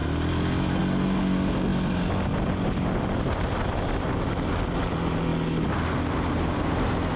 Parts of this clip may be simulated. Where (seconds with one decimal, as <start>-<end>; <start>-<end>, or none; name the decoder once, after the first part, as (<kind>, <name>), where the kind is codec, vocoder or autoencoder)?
none